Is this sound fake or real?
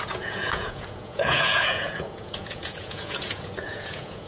fake